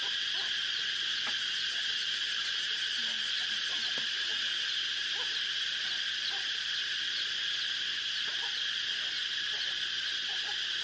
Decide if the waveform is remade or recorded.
recorded